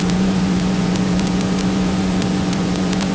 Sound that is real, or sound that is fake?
fake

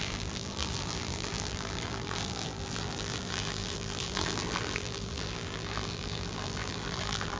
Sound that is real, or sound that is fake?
fake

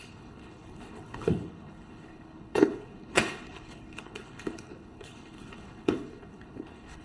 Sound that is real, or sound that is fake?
fake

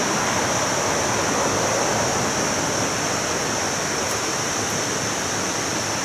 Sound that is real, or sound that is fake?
real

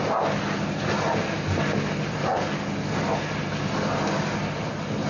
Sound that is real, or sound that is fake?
real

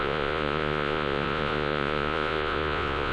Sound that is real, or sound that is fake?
fake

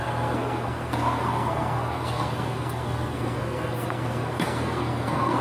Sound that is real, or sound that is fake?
fake